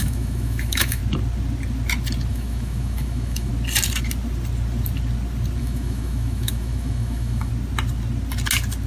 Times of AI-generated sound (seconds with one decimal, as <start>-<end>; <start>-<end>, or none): 0.0-1.0; 2.3-3.5; 5.6-7.5